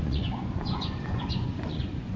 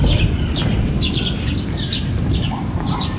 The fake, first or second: first